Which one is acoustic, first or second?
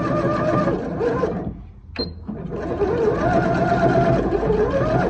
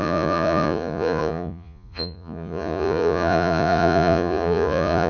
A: first